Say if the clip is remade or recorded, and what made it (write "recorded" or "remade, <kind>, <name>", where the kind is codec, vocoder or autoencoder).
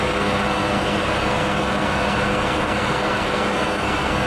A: remade, codec, SNAC